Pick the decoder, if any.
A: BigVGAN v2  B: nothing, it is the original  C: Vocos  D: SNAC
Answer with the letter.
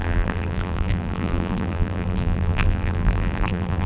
A